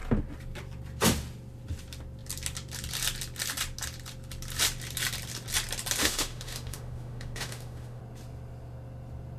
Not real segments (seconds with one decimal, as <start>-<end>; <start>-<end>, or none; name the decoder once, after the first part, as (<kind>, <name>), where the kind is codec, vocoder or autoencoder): 6.0-8.0 (autoencoder, DAC-VAE)